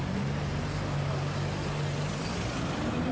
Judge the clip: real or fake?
real